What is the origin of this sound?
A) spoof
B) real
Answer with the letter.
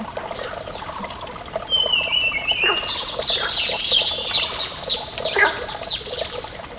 B